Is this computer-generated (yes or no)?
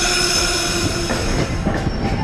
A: yes